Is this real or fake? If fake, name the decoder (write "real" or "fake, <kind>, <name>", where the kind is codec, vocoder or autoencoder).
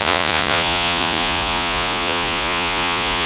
fake, vocoder, Vocos